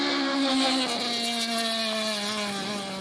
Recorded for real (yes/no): yes